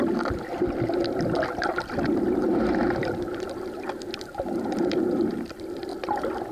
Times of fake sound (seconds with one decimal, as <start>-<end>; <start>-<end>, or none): none